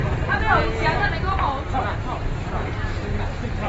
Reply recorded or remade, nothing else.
recorded